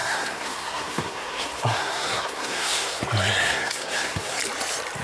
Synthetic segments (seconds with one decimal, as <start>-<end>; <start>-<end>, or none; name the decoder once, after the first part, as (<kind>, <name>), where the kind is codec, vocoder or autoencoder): 0.0-3.0 (codec, SNAC); 3.4-4.4